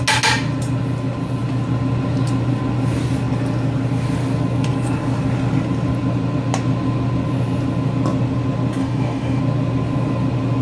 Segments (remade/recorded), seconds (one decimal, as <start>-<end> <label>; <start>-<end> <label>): 0.0-8.8 recorded; 8.8-9.4 remade; 9.4-10.6 recorded